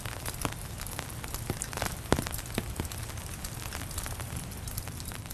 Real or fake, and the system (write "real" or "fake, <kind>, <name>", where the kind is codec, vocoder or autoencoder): real